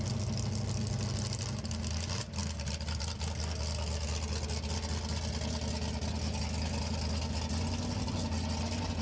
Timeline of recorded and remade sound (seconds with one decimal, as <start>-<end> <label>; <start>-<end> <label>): 0.0-9.0 recorded